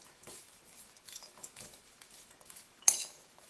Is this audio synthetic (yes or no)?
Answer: yes